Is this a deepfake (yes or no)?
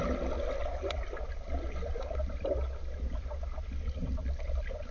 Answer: no